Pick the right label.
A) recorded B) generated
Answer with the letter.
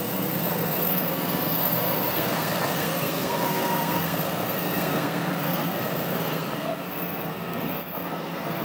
B